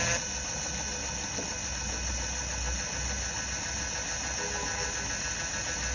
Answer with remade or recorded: recorded